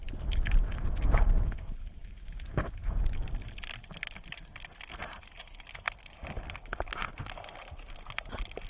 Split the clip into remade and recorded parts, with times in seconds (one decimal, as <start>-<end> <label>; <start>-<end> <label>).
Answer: 0.0-8.7 recorded